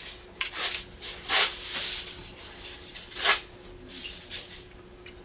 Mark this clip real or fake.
real